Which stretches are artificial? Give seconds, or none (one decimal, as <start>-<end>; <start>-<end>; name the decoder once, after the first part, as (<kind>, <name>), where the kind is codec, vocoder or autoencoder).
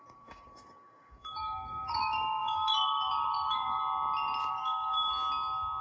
0.0-3.8 (codec, DAC); 4.5-5.1